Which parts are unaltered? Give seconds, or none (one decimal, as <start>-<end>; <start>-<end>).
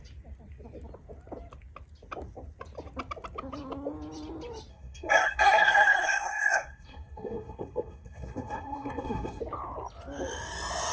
0.0-4.7; 9.4-10.9